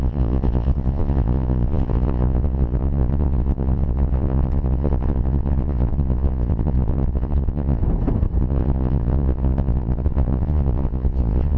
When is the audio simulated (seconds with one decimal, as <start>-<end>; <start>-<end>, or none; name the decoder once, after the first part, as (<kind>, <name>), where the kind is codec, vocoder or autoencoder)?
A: 0.0-7.8 (vocoder, Vocos); 8.4-11.6